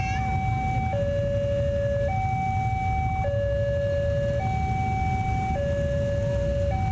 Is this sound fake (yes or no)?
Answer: no